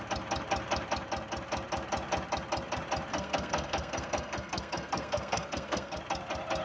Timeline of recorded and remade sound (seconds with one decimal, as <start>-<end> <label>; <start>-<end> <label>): 0.0-3.1 recorded; 3.1-6.0 remade; 6.0-6.6 recorded